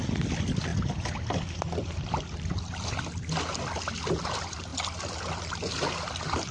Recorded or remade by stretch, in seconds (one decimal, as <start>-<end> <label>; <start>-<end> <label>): 0.0-6.5 recorded